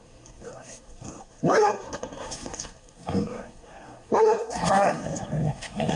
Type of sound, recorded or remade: remade